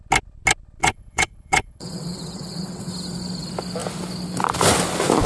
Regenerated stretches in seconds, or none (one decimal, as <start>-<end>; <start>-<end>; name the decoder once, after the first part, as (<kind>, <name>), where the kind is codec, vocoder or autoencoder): 0.8-2.9 (vocoder, WaveNeXt)